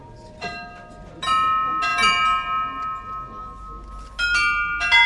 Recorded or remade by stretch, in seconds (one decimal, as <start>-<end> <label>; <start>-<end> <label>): 0.0-1.1 remade; 1.1-5.1 recorded